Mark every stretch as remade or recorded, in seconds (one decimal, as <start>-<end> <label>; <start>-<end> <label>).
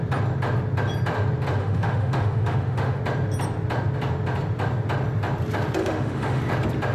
0.0-1.6 recorded; 1.6-3.0 remade; 3.0-5.8 recorded; 5.8-6.4 remade; 6.4-6.9 recorded